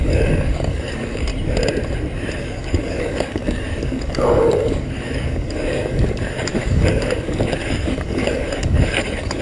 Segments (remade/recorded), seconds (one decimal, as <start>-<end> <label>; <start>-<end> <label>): 0.0-1.3 remade; 1.3-2.4 recorded; 2.4-9.4 remade